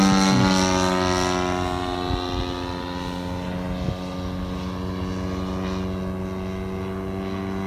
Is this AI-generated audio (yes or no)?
no